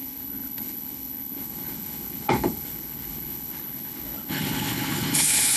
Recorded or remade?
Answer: remade